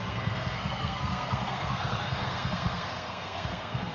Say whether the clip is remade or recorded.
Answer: remade